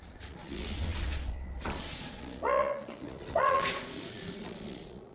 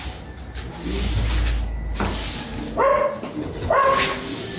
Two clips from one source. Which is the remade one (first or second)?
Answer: first